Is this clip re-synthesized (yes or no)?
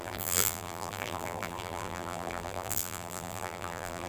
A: yes